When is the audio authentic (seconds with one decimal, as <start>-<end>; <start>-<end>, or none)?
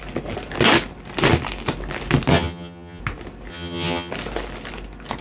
0.0-2.3; 3.0-3.5; 4.1-5.2